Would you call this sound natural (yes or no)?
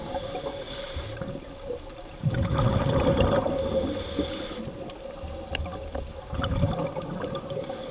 yes